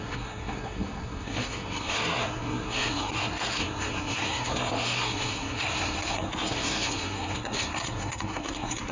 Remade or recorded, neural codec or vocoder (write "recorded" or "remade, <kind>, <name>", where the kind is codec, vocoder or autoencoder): remade, codec, SNAC